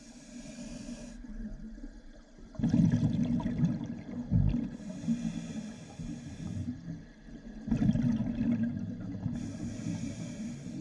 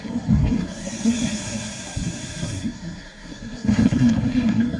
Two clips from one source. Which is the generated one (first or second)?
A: second